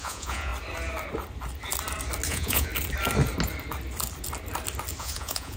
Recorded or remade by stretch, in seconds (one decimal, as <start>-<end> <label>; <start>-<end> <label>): 0.0-0.5 remade; 0.5-2.3 recorded; 2.3-2.7 remade; 2.7-5.0 recorded; 5.0-5.6 remade